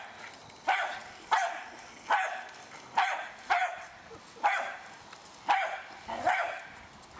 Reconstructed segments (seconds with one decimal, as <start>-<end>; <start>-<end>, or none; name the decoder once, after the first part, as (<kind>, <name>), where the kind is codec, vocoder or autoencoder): none